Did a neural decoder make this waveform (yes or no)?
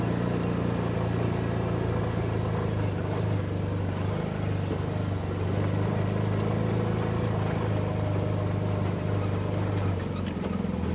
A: no